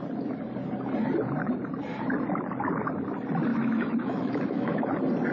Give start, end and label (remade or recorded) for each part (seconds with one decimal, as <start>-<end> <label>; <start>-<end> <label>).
0.0-3.5 recorded; 3.5-4.8 remade; 4.8-5.3 recorded